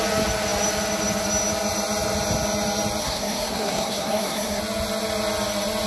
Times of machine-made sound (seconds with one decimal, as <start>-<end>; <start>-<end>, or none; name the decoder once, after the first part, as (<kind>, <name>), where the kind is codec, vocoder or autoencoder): 3.0-4.6 (codec, SNAC)